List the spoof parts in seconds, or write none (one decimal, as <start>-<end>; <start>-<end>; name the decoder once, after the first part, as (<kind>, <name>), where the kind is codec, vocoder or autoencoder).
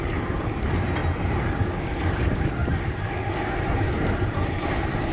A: 0.0-2.6 (vocoder, BigVGAN v2); 3.7-5.1